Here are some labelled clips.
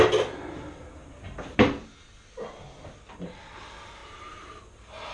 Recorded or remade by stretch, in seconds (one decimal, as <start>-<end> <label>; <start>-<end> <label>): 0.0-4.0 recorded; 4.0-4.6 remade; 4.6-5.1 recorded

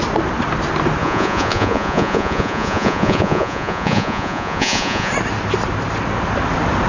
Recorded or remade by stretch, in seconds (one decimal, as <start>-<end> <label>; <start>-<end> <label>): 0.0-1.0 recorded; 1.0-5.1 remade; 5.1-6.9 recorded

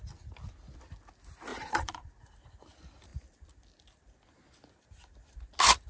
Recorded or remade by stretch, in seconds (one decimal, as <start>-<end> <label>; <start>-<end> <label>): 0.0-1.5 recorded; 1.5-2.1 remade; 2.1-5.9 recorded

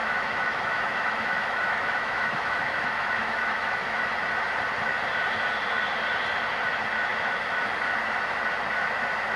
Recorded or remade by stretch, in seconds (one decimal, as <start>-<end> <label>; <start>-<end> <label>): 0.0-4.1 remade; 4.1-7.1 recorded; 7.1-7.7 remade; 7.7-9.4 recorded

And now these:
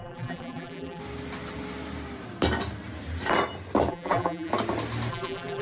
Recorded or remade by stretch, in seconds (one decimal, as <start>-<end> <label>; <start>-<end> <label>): 0.0-1.0 remade; 1.0-3.9 recorded; 3.9-4.5 remade; 4.5-5.1 recorded; 5.1-5.6 remade